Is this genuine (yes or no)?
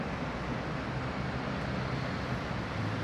yes